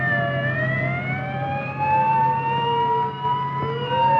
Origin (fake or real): real